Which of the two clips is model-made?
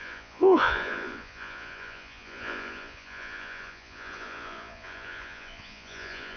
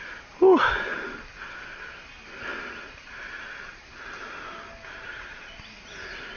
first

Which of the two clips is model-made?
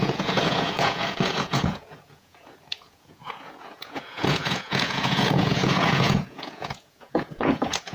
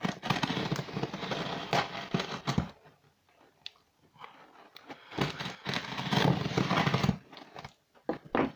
first